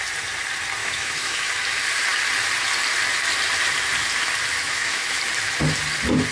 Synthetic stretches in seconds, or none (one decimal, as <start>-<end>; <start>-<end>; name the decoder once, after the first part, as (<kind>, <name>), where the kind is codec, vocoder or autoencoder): 0.8-1.5 (autoencoder, DAC-VAE); 4.6-5.2